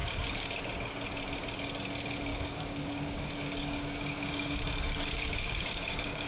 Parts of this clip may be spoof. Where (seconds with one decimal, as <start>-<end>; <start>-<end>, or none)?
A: 0.0-0.6; 2.3-6.3